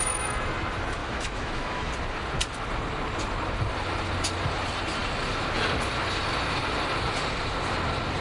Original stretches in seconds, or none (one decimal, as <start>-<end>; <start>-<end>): 0.0-1.0; 1.9-8.2